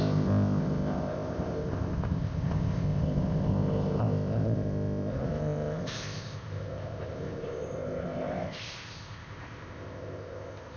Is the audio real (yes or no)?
no